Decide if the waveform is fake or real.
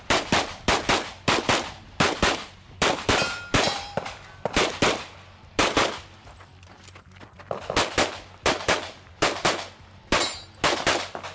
fake